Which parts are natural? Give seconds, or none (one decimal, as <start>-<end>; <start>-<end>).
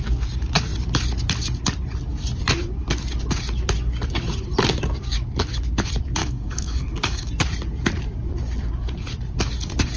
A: 0.0-6.2; 7.3-10.0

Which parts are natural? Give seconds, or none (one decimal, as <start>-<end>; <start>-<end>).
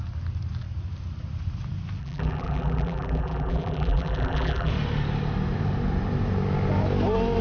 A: 0.0-2.0; 4.7-7.4